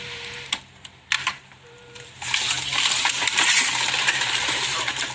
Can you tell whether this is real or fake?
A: fake